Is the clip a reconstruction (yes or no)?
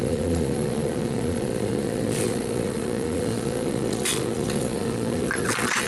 yes